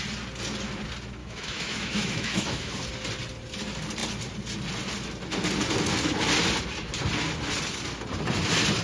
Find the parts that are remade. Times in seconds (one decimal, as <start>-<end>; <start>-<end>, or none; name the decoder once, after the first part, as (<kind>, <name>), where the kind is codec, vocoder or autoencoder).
1.2-2.8 (autoencoder, DAC-VAE)